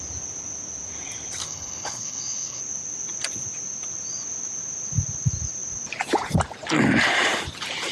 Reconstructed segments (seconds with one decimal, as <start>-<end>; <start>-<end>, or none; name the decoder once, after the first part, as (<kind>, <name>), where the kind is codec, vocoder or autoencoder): 1.4-2.6 (codec, HILCodec)